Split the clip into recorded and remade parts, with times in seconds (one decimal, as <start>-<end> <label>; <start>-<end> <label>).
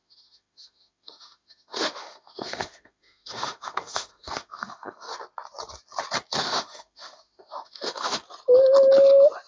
0.0-5.1 remade; 5.1-6.4 recorded; 6.4-8.2 remade; 8.2-9.5 recorded